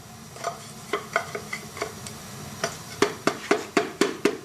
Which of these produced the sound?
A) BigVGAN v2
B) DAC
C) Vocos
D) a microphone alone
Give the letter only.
A